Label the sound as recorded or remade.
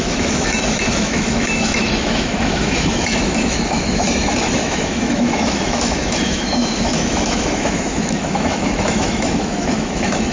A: remade